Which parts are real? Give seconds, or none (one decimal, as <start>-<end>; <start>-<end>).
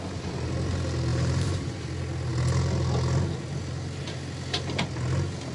0.0-1.1; 1.9-5.5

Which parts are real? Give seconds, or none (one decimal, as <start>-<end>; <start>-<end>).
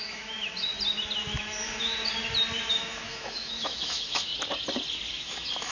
0.7-1.4; 2.0-2.7; 4.3-5.1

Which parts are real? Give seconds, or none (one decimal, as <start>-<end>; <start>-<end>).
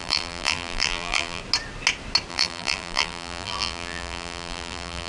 1.4-2.3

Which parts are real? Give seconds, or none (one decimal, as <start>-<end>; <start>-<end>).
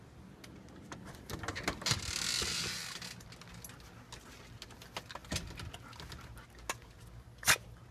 0.0-7.9